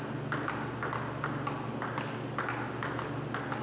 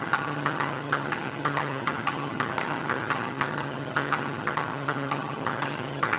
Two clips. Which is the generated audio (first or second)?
second